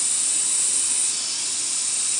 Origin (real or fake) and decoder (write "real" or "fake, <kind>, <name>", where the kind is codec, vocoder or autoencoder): real